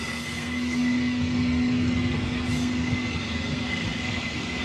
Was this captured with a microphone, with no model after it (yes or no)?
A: no